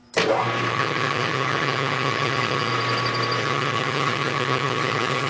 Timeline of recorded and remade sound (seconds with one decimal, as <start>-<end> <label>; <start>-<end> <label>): 0.0-0.7 recorded; 0.7-2.7 remade; 2.7-3.4 recorded; 3.4-5.3 remade